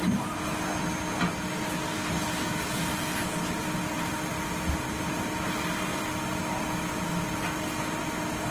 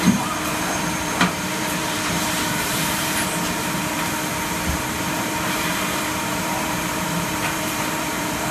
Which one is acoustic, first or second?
first